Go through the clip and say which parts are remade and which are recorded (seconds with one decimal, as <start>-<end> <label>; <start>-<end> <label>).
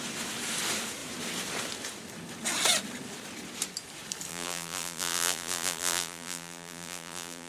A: 0.0-4.3 recorded; 4.3-7.5 remade